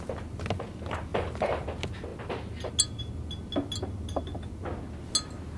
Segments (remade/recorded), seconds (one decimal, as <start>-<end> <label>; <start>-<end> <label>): 0.0-1.1 recorded; 1.1-1.7 remade; 1.7-5.6 recorded